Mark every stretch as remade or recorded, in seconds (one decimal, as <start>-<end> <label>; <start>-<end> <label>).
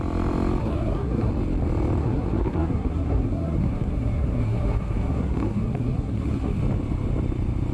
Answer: 0.0-0.6 recorded; 0.6-1.3 remade; 1.3-2.0 recorded; 2.0-6.6 remade; 6.6-7.7 recorded